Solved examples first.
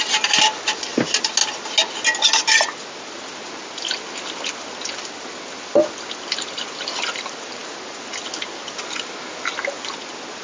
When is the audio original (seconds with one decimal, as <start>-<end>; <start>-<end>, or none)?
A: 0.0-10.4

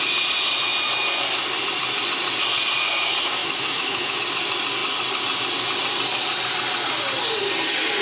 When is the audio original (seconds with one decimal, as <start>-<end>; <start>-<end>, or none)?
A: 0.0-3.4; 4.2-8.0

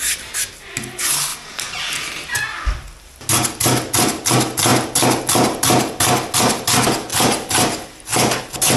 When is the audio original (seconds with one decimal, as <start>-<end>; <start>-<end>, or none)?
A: 0.0-8.8

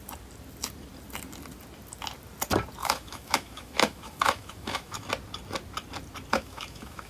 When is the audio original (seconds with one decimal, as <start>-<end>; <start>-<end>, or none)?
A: 0.0-2.8; 5.1-6.3